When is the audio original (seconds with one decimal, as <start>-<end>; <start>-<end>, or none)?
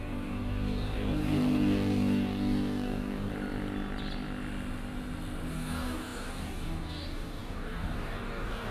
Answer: 3.3-5.5